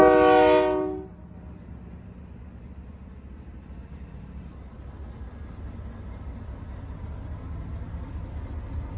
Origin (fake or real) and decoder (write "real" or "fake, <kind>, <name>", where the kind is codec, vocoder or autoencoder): real